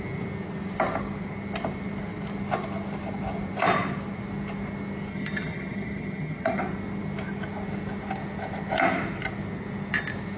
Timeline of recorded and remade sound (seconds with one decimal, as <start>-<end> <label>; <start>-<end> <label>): 0.0-5.1 recorded; 5.1-6.6 remade; 6.6-10.4 recorded